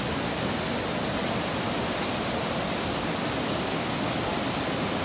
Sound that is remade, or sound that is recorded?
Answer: recorded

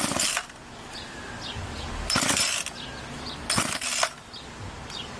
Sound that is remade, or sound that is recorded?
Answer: recorded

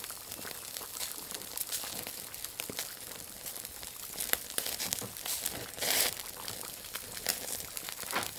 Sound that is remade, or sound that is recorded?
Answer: remade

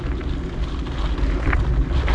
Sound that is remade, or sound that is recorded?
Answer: recorded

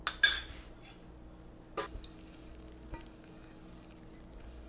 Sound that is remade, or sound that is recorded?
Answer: recorded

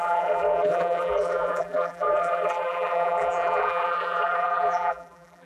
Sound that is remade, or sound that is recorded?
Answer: remade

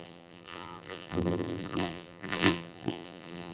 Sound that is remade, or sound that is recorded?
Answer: remade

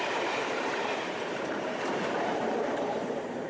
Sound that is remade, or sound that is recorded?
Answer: remade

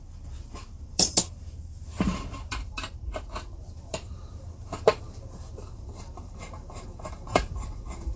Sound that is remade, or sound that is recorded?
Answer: remade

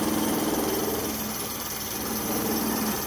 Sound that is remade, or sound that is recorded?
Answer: remade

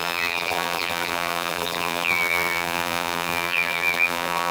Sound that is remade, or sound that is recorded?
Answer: remade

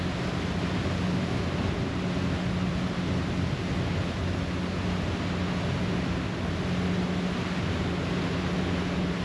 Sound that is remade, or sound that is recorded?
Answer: recorded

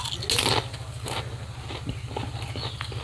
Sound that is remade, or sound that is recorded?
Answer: recorded